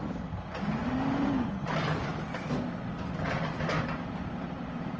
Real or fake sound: real